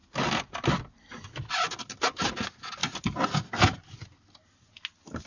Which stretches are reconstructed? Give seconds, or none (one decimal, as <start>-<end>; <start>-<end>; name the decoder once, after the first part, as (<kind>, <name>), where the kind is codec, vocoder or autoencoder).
none

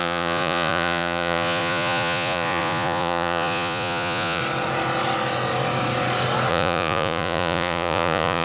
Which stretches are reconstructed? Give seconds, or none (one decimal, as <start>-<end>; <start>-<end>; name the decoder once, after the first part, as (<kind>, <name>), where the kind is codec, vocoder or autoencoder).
0.0-4.4 (vocoder, Vocos); 6.5-8.4

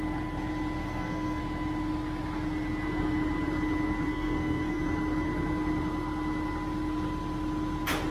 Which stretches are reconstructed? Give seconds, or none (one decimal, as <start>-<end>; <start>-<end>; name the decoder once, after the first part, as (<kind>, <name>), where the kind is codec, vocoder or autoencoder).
0.8-1.4 (codec, SNAC); 4.1-4.8

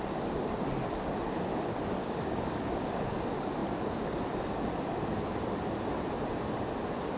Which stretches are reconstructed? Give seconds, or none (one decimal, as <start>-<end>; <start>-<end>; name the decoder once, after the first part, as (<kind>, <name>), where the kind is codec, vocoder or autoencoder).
2.0-2.6 (codec, DAC)

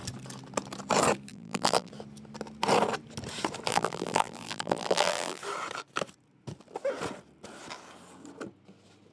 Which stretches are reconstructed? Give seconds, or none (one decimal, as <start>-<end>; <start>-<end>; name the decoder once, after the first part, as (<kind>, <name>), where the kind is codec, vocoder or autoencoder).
1.3-1.9 (vocoder, BigVGAN v2); 3.7-5.4

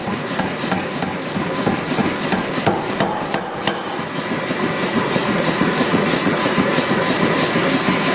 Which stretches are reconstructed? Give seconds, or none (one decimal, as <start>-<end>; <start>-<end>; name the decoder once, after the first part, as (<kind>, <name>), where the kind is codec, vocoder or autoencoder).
0.0-1.0 (vocoder, Vocos); 4.9-7.0